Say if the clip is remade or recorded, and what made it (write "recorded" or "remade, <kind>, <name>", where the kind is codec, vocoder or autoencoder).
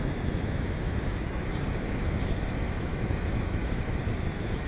remade, autoencoder, DAC-VAE